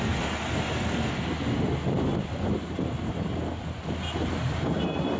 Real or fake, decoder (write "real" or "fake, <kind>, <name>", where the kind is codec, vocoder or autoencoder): real